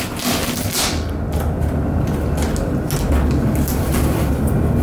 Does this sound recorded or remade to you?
recorded